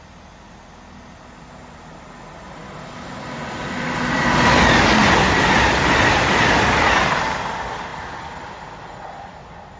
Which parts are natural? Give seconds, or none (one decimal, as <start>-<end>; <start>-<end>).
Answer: 0.0-9.8